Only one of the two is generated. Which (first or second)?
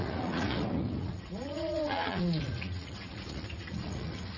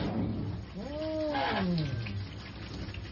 first